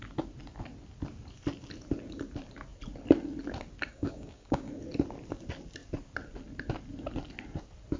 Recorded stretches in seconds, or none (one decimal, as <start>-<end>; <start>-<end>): 0.0-3.9; 4.7-8.0